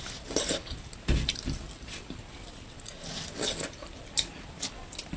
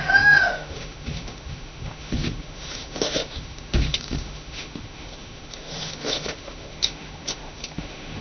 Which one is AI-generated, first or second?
second